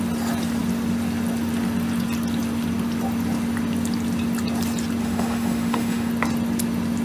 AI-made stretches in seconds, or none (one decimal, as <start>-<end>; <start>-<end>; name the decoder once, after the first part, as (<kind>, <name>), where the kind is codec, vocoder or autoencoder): 5.0-6.1 (autoencoder, DAC-VAE)